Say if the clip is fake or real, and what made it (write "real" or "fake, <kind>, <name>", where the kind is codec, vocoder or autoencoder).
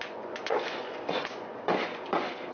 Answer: fake, vocoder, Vocos